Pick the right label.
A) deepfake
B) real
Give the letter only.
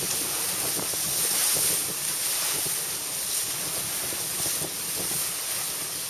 B